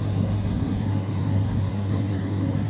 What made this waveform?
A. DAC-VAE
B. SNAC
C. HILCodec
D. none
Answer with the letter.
B